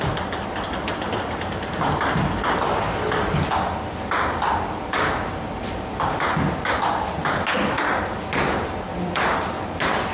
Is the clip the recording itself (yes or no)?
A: yes